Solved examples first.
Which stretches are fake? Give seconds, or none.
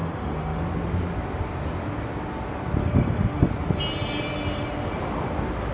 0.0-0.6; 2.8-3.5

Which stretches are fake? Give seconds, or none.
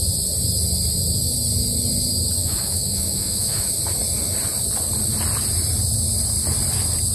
2.4-3.8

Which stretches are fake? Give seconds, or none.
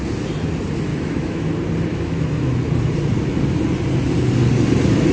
0.9-1.5; 1.9-2.5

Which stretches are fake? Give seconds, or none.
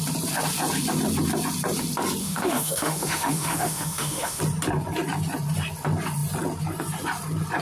2.2-4.4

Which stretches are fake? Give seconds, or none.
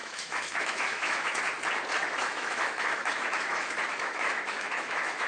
0.0-1.4; 2.0-5.3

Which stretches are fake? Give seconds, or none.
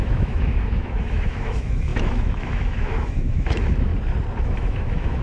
0.0-3.9; 4.4-5.2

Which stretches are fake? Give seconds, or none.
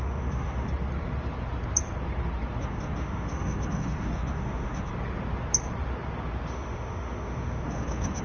0.0-0.7; 2.6-4.9; 6.5-8.2